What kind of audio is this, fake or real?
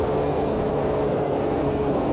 fake